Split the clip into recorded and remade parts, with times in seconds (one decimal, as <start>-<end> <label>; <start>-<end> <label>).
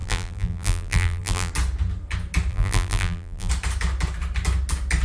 0.0-1.5 remade; 1.5-2.5 recorded; 2.5-3.5 remade; 3.5-5.0 recorded